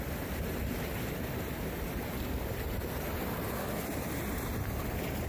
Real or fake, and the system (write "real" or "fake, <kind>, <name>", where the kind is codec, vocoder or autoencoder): real